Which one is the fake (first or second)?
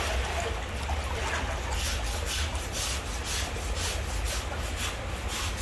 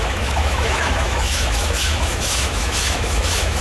second